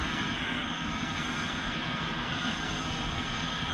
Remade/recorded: remade